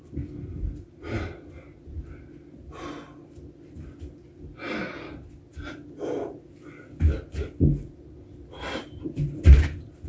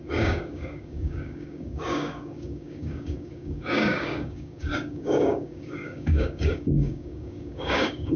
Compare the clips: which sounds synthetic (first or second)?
second